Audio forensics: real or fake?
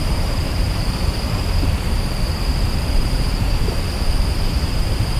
fake